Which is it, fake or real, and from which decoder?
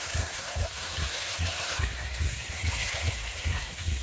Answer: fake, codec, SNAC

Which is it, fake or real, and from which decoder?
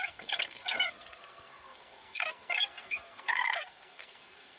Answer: fake, codec, SNAC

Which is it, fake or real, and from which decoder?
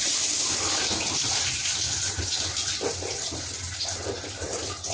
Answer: real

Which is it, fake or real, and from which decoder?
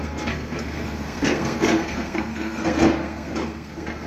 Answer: fake, codec, SNAC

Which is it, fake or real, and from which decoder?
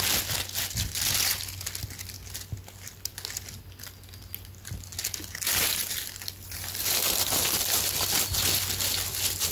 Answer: real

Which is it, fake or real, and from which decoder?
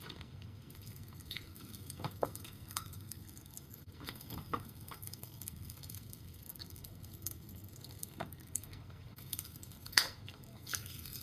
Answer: fake, codec, SNAC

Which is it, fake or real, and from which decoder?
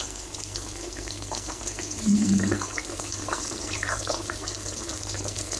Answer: fake, codec, SNAC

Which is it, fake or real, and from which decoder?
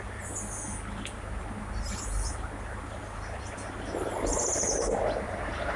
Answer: real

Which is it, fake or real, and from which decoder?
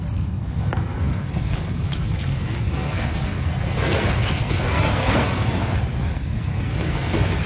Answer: fake, codec, SNAC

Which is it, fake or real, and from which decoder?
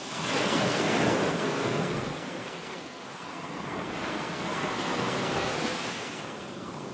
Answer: fake, codec, SNAC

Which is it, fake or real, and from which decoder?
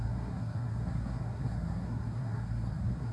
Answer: fake, codec, SNAC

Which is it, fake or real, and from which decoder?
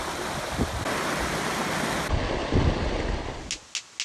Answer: real